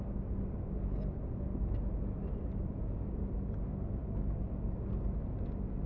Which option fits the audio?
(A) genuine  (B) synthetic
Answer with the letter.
A